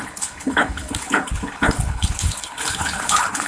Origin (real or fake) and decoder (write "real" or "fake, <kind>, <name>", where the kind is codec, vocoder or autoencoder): fake, codec, HILCodec